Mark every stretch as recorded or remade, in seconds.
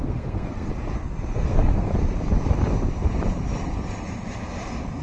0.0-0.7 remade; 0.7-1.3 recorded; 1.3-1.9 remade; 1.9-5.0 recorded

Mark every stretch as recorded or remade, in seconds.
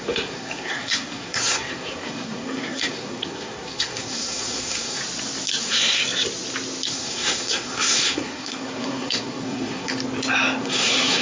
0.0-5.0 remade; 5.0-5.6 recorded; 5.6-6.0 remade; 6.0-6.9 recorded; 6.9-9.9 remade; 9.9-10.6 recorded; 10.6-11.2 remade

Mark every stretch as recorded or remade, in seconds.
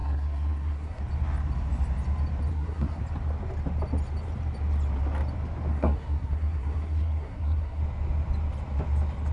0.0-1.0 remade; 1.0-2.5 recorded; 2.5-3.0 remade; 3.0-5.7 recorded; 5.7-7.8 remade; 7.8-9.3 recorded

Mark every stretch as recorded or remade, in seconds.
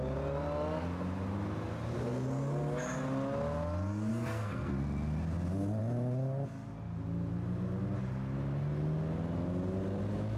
0.0-4.1 recorded; 4.1-4.7 remade; 4.7-10.4 recorded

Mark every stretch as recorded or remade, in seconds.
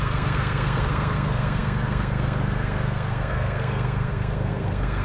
0.0-5.0 remade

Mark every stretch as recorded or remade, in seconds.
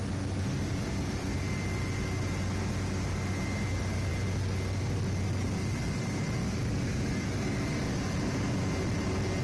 0.0-9.4 recorded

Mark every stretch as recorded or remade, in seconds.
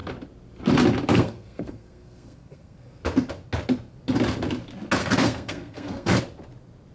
0.0-1.1 recorded; 1.1-3.0 remade; 3.0-5.0 recorded; 5.0-6.2 remade; 6.2-6.9 recorded